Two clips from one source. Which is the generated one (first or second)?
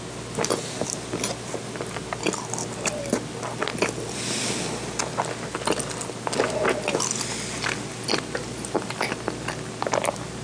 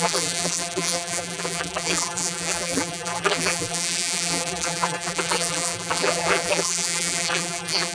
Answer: second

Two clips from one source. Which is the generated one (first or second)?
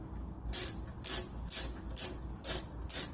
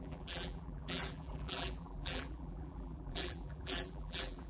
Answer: second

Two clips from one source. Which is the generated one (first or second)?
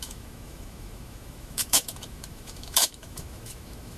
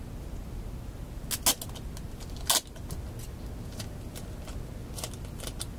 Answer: first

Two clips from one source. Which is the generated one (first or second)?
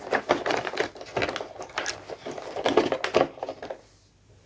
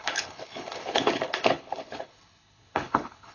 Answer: second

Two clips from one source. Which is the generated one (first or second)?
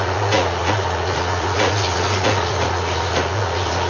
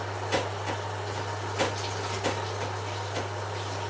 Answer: first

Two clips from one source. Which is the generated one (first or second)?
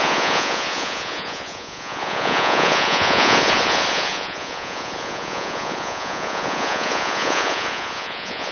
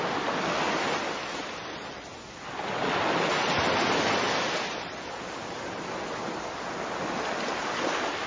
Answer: first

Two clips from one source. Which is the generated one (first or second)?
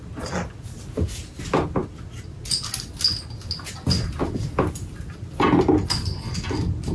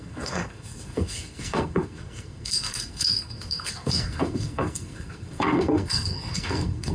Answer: second